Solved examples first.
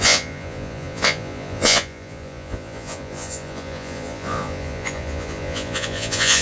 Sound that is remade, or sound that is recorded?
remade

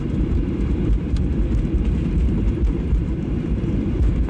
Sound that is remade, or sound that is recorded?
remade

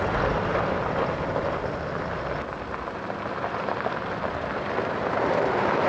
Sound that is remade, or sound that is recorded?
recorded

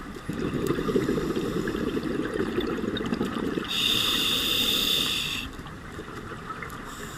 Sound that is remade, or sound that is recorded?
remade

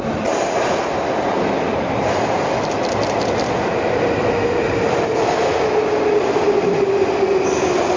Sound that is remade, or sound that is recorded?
recorded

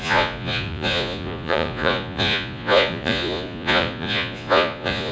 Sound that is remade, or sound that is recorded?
remade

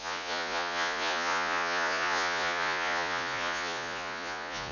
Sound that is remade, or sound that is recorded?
remade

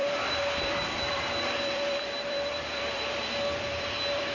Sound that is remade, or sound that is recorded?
remade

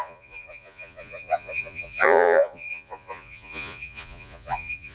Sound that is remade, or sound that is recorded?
remade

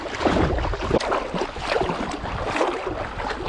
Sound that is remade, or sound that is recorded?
recorded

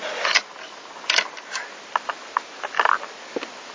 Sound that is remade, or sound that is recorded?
recorded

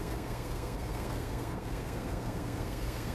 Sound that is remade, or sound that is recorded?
remade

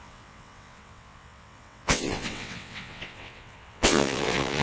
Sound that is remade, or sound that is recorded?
remade